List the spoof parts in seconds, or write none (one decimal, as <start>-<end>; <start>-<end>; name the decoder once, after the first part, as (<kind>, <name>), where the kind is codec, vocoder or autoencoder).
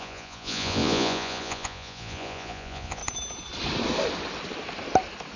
0.0-3.0 (vocoder, Vocos)